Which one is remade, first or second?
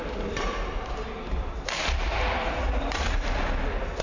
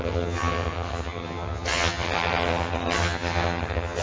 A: second